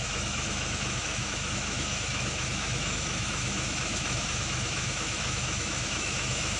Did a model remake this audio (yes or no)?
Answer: yes